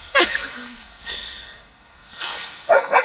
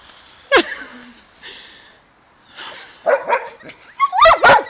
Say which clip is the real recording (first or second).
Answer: second